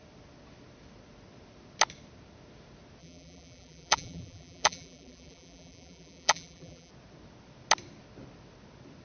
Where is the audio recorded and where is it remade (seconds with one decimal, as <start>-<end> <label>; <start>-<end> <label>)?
0.0-3.0 recorded; 3.0-6.9 remade; 6.9-9.0 recorded